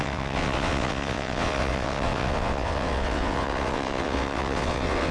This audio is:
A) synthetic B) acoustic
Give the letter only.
A